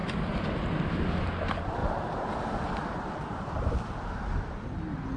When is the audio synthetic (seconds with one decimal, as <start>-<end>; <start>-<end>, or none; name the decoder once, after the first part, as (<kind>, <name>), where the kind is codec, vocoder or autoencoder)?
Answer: 1.8-3.7 (vocoder, BigVGAN v2)